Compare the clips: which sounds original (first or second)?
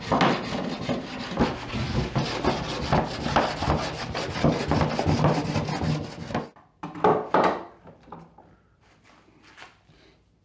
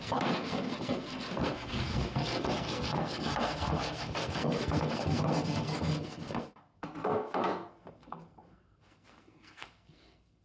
first